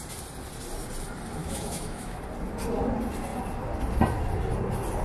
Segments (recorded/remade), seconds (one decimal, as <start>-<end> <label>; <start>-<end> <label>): 0.0-1.4 recorded; 1.4-2.2 remade; 2.2-5.0 recorded